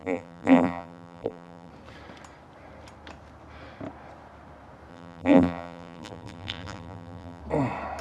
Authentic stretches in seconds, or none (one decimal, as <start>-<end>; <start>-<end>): 1.7-4.9; 7.4-8.0